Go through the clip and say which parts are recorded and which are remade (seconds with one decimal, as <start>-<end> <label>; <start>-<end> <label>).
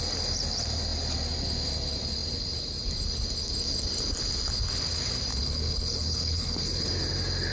0.0-5.3 recorded; 5.3-6.9 remade; 6.9-7.5 recorded